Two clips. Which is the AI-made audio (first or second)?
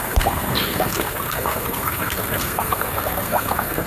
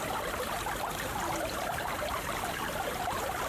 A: first